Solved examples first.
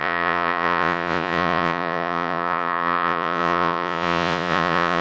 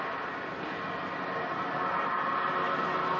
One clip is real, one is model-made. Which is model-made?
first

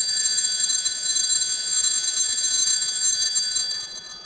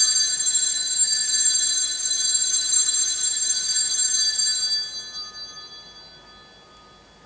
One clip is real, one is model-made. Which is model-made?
first